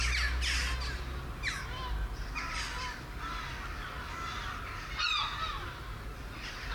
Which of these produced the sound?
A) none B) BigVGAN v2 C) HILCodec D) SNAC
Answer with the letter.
A